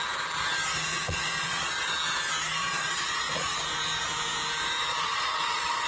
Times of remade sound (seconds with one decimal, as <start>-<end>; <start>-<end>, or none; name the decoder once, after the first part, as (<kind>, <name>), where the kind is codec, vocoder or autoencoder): 0.9-1.9 (vocoder, Vocos); 2.6-3.6; 4.9-5.9

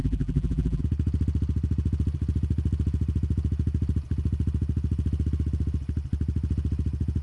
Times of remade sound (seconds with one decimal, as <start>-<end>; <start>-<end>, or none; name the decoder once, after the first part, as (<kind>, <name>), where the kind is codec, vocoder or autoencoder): 0.0-0.8 (vocoder, BigVGAN v2)

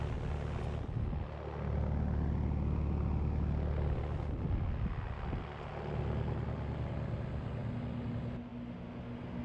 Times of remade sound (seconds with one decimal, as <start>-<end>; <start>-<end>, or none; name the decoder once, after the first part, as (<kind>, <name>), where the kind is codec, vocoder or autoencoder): none

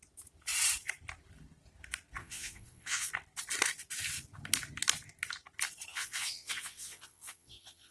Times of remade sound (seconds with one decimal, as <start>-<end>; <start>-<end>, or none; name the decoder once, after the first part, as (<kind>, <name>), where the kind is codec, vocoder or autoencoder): 2.2-3.1 (vocoder, Vocos); 5.9-7.9

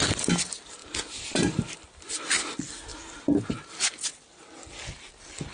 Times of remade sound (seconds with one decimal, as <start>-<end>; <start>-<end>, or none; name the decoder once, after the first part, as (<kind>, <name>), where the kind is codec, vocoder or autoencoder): none

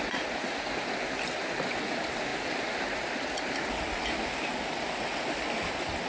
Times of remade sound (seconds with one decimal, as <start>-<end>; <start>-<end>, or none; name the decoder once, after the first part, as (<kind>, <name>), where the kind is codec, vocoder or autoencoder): none

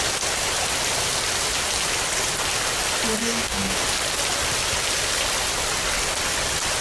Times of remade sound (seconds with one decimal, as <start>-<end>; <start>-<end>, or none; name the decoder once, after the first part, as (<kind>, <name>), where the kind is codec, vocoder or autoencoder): 3.2-3.8 (codec, DAC)